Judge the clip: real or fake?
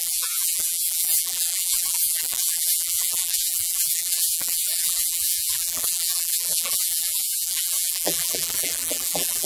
fake